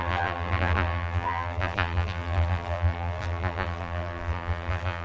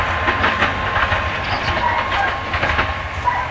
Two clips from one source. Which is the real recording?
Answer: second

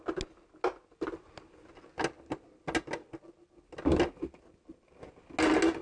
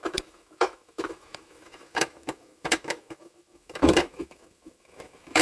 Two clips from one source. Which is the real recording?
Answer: first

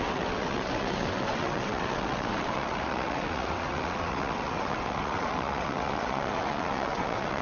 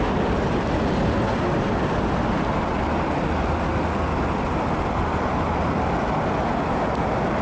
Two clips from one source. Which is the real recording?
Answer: second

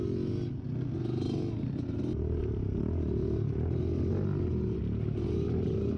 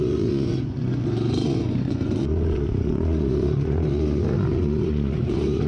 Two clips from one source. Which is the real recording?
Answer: first